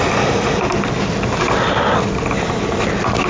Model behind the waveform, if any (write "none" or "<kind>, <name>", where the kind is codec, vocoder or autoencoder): none